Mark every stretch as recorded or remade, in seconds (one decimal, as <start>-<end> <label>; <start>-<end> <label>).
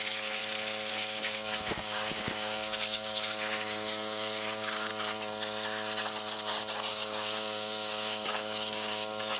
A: 0.0-0.4 remade; 0.4-0.9 recorded; 0.9-4.9 remade; 4.9-6.9 recorded; 6.9-9.4 remade